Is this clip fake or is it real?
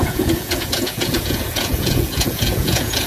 fake